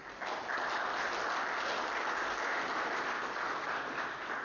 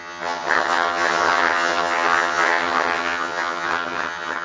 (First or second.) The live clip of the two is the first